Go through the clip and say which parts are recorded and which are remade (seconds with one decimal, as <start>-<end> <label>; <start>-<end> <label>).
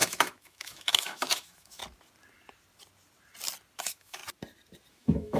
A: 0.0-1.8 remade; 1.8-3.8 recorded; 3.8-4.2 remade; 4.2-4.9 recorded; 4.9-5.4 remade